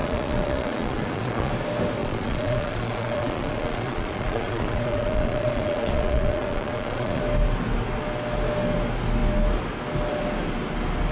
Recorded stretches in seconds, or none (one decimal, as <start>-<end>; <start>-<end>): 1.5-2.0; 7.2-11.1